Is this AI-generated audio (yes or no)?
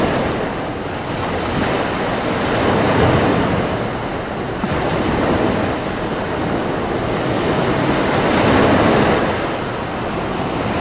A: no